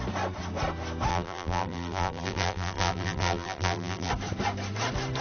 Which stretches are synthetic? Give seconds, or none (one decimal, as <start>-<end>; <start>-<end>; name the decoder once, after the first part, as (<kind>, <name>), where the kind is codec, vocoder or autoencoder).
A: 1.1-4.1 (vocoder, BigVGAN v2)